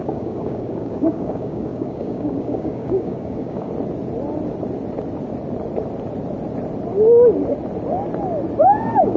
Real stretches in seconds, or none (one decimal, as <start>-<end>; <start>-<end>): 3.7-8.6